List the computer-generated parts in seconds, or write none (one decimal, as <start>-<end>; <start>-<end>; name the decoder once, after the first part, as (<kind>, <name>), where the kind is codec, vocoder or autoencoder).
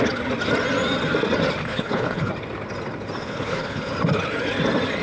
1.6-2.3 (codec, HILCodec); 3.2-3.9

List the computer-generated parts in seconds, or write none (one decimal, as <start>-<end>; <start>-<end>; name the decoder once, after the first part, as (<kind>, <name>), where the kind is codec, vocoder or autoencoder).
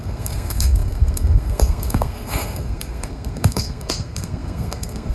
0.0-5.1 (codec, SNAC)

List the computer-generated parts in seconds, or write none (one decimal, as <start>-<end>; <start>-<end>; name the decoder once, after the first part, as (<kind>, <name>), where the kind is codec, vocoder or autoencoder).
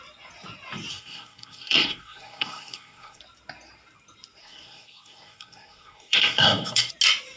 0.9-3.2 (codec, SNAC); 4.4-6.9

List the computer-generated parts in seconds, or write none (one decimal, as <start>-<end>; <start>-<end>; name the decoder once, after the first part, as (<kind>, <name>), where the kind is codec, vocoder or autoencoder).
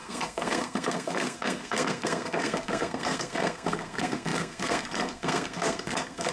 0.0-6.3 (codec, SNAC)